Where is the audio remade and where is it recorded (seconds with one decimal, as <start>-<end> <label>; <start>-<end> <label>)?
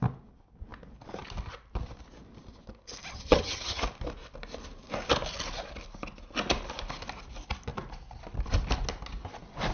0.0-3.1 recorded; 3.1-3.8 remade; 3.8-9.7 recorded